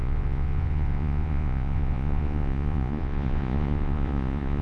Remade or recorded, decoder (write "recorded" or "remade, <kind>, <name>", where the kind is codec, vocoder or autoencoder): remade, vocoder, Vocos